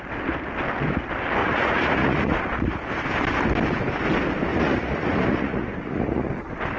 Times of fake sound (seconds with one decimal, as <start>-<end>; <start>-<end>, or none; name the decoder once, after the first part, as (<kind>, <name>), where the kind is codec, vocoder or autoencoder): 1.4-2.4 (vocoder, Vocos); 4.5-6.3